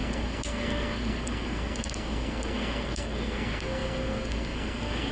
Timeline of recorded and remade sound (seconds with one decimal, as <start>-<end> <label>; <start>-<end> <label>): 0.0-5.1 remade